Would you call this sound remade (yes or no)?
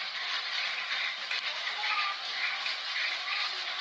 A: no